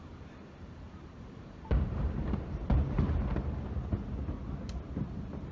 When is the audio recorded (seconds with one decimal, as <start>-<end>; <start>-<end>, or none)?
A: 2.7-5.5